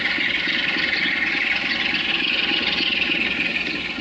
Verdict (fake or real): real